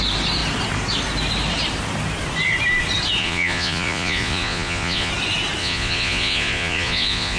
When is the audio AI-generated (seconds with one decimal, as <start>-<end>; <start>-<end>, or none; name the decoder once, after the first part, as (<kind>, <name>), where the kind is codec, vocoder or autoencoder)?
3.2-5.1 (vocoder, Vocos); 5.6-7.4